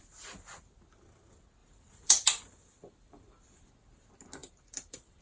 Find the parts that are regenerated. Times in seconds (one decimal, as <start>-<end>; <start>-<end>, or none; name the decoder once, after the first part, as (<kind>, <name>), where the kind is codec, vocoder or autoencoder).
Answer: 1.6-3.7 (vocoder, BigVGAN v2); 4.4-5.2